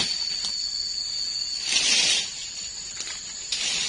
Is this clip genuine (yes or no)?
yes